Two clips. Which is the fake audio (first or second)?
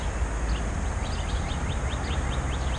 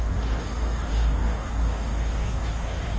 second